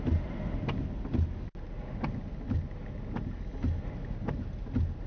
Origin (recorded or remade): recorded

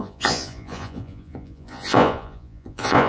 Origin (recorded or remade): remade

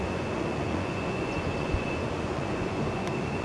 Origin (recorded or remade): remade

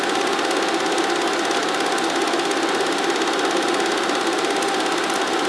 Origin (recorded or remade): recorded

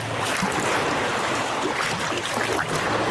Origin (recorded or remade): recorded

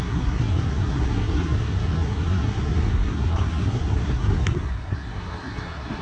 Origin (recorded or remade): remade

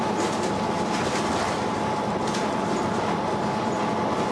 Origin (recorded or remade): remade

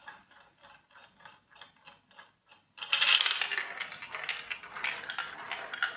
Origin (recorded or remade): recorded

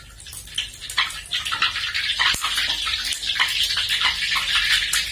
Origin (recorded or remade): recorded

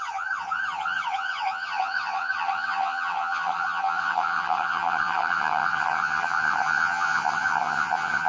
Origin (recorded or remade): remade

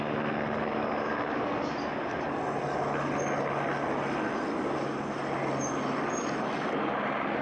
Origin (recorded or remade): recorded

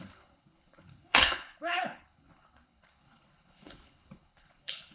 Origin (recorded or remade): remade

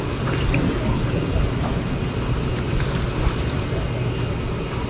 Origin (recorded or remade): recorded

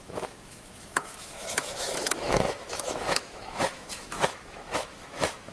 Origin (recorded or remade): remade